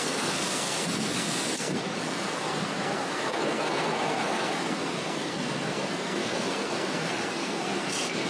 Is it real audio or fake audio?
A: fake